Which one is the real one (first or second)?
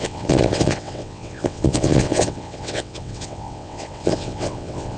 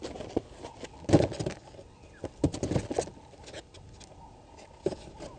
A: second